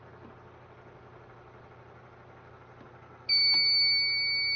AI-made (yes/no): no